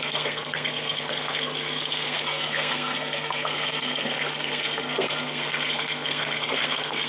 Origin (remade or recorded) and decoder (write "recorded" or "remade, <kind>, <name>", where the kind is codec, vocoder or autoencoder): remade, codec, SNAC